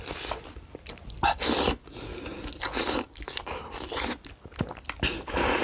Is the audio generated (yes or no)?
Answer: no